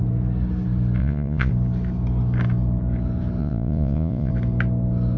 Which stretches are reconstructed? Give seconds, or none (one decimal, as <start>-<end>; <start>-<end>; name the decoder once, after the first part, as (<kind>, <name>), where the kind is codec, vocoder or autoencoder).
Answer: 1.0-1.5 (vocoder, Vocos); 3.4-4.3